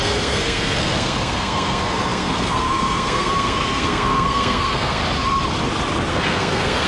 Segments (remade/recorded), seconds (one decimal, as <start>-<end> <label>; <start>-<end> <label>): 0.0-5.0 remade; 5.0-6.1 recorded; 6.1-6.9 remade